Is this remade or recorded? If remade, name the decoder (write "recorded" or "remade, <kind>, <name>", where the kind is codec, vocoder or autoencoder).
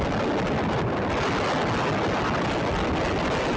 recorded